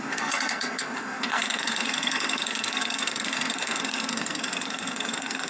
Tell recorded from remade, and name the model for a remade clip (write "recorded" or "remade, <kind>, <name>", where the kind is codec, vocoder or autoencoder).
remade, codec, SNAC